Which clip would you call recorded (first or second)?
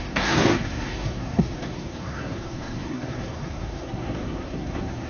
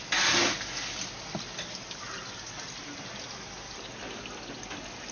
second